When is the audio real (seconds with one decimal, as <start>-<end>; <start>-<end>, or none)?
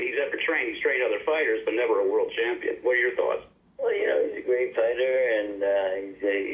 0.0-6.5